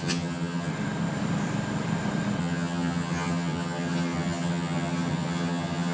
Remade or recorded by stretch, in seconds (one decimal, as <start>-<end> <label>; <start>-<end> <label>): 0.0-0.7 remade; 0.7-2.4 recorded; 2.4-5.9 remade